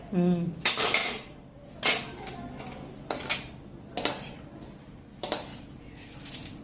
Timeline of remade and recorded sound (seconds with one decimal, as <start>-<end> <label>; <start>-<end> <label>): 0.0-6.6 recorded